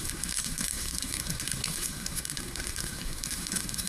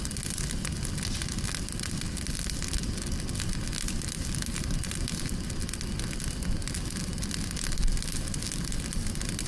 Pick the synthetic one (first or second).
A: first